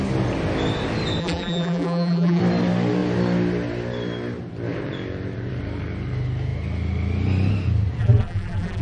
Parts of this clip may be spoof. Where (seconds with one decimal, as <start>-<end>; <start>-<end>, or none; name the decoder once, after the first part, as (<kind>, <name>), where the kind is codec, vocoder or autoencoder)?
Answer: 1.2-2.4 (vocoder, BigVGAN v2); 8.0-8.8